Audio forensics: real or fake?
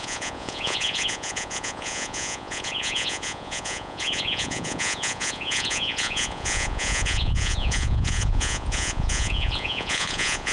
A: fake